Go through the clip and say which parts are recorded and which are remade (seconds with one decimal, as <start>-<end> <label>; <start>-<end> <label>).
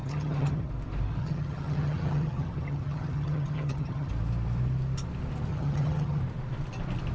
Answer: 0.0-0.7 remade; 0.7-1.2 recorded; 1.2-4.1 remade; 4.1-5.5 recorded; 5.5-6.2 remade; 6.2-7.1 recorded